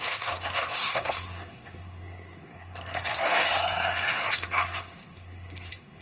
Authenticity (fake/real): fake